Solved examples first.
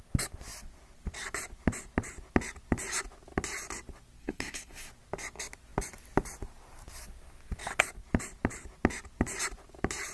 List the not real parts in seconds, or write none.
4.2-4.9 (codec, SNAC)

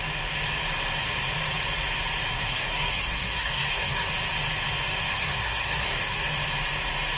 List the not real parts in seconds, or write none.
2.3-4.1 (codec, SNAC); 5.1-6.3